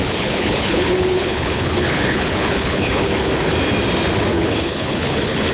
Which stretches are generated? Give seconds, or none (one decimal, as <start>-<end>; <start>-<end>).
0.0-3.3; 4.3-5.5